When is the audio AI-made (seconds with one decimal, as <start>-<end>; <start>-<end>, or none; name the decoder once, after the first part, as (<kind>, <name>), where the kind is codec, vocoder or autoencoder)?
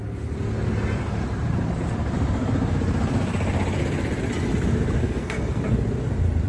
5.0-5.6 (codec, SNAC)